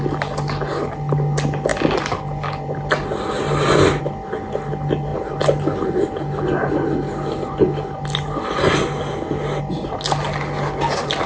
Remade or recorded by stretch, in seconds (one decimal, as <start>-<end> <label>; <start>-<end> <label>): 0.0-11.3 recorded